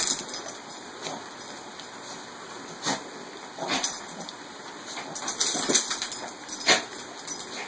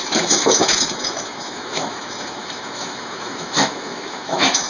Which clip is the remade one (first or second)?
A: second